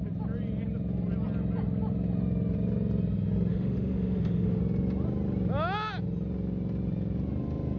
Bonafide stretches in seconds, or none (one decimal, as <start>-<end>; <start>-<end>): 0.0-3.5; 4.6-7.8

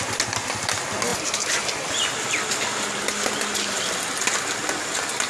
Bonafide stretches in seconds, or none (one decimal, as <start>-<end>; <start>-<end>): 0.0-5.3